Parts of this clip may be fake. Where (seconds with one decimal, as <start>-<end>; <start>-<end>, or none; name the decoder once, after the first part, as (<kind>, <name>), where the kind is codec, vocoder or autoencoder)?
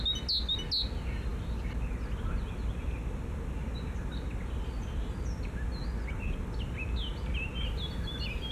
none